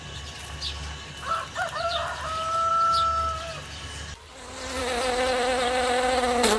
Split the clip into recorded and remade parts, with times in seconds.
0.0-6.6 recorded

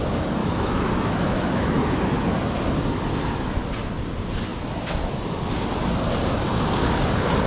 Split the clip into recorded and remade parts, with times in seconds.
0.0-0.4 recorded; 0.4-1.8 remade; 1.8-7.5 recorded